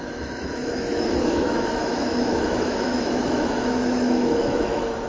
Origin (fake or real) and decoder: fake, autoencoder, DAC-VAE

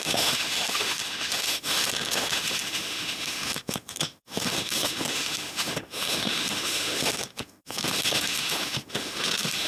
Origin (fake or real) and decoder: fake, autoencoder, DAC-VAE